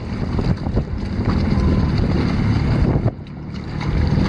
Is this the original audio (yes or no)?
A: yes